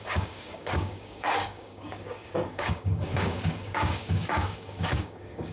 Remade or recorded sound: remade